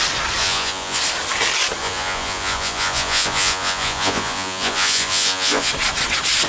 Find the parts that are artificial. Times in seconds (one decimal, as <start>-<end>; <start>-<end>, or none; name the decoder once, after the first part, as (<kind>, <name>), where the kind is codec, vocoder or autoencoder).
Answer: 0.4-1.0 (vocoder, Vocos); 1.8-5.7